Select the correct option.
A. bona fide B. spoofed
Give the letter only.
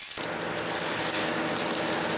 A